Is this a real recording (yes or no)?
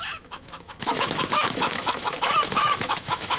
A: no